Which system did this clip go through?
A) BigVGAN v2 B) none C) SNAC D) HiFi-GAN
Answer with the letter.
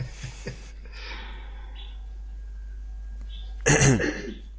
B